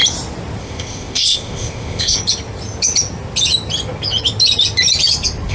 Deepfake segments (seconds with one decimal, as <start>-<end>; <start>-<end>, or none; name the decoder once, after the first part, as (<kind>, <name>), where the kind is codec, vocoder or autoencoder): 0.6-2.2 (codec, ZipCodec)